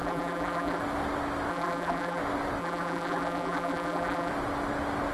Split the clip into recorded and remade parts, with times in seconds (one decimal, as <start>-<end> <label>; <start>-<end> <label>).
0.0-0.8 remade; 0.8-1.5 recorded; 1.5-2.2 remade; 2.2-2.6 recorded; 2.6-4.3 remade; 4.3-5.1 recorded